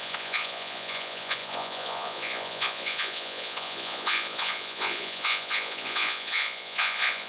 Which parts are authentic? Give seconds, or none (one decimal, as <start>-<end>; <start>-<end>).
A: none